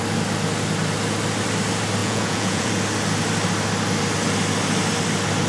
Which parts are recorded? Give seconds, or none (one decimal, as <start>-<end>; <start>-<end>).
0.0-2.0; 2.7-5.5